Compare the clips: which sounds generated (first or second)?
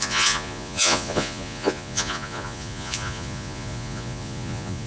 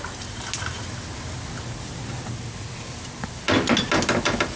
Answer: first